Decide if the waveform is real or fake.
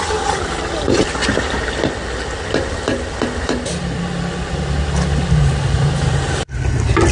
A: real